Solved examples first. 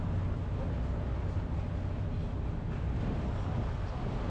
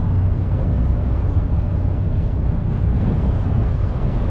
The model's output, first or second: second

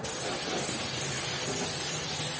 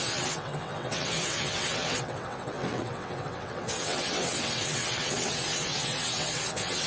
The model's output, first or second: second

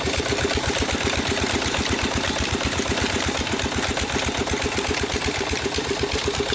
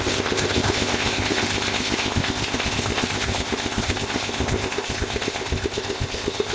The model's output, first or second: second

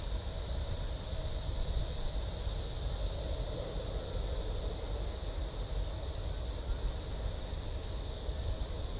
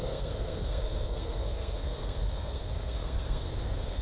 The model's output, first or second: second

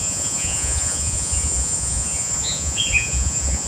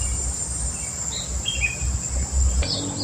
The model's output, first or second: first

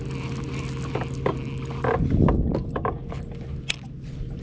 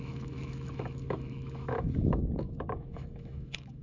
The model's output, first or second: second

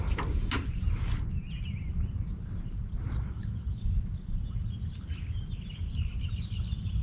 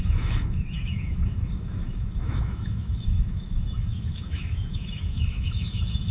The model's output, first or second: second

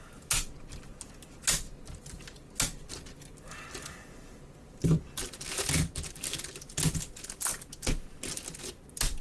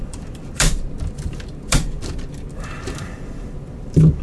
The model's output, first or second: second